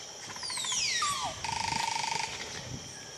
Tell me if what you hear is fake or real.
real